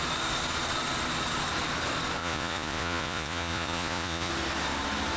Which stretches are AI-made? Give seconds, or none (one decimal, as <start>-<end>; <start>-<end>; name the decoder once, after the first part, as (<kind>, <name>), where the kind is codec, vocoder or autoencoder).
2.2-4.3 (vocoder, Vocos)